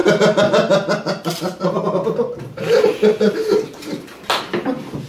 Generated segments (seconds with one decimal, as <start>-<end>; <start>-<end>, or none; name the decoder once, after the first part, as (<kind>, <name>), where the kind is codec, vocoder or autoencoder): 3.0-4.4 (vocoder, BigVGAN v2)